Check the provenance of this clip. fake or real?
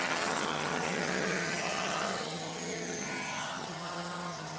fake